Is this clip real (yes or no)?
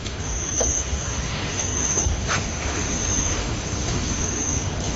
no